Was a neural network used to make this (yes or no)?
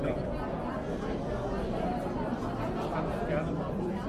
no